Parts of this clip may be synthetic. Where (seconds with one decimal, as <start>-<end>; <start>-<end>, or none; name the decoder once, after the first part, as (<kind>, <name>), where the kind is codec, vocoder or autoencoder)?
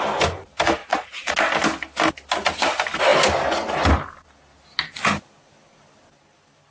0.8-1.3 (vocoder, Vocos)